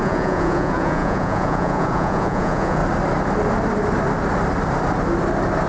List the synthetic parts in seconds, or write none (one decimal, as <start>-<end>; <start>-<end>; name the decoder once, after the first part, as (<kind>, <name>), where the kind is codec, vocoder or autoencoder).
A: 0.0-2.8 (vocoder, Vocos)